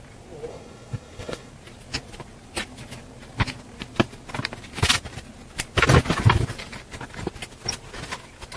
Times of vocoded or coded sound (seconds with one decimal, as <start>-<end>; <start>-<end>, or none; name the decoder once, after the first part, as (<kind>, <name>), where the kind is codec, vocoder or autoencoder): 0.5-1.5 (codec, SNAC)